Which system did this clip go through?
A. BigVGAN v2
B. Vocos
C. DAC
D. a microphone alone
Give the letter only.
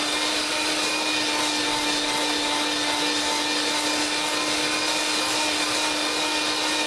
D